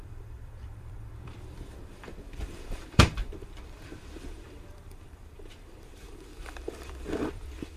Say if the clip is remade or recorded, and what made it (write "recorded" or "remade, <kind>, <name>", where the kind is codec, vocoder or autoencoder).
remade, vocoder, BigVGAN v2